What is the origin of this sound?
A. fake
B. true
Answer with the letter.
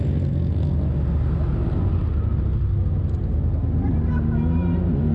B